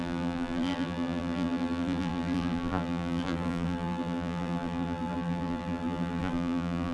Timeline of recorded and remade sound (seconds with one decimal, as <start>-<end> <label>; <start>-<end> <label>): 0.0-6.9 remade